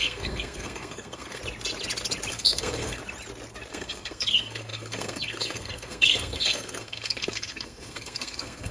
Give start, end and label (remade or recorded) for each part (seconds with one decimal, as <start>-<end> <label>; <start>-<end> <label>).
0.0-1.4 remade; 1.4-2.3 recorded; 2.3-3.0 remade; 3.0-3.7 recorded; 3.7-8.7 remade